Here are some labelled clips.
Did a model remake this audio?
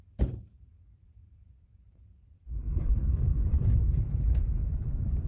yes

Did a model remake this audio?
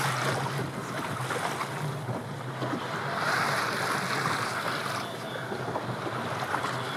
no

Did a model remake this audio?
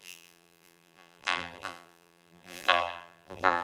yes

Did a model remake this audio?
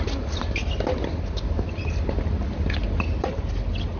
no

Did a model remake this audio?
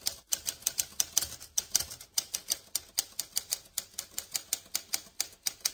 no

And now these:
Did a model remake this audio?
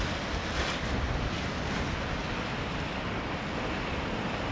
no